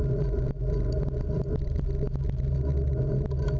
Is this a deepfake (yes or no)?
no